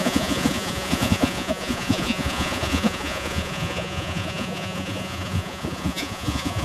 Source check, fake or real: fake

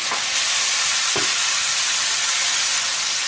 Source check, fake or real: real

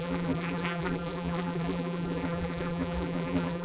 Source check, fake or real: fake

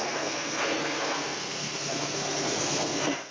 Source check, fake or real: fake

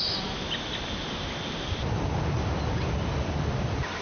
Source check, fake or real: real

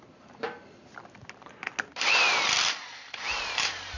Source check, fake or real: real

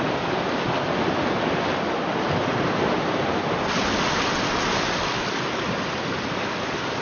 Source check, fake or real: real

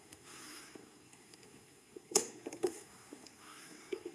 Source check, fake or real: fake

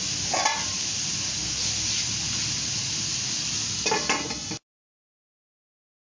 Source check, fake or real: real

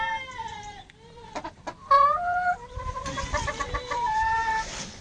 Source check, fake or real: fake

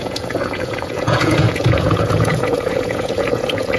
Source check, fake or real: fake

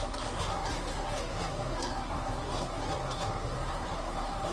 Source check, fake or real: fake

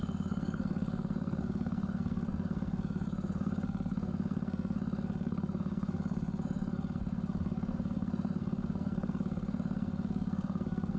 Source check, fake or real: fake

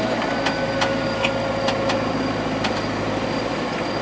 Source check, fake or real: real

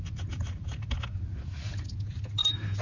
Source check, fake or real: real